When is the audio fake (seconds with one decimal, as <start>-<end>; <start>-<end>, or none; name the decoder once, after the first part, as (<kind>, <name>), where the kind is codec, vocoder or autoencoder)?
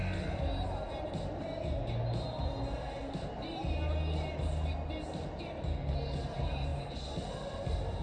none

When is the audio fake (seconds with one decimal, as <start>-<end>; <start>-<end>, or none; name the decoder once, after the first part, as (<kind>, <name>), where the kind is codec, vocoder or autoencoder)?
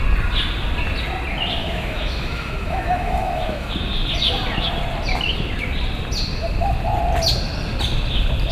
1.6-3.7 (autoencoder, DAC-VAE)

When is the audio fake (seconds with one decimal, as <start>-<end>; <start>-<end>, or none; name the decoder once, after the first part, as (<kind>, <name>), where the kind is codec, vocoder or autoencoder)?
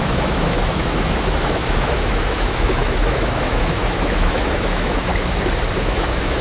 0.0-5.1 (autoencoder, DAC-VAE); 5.8-6.4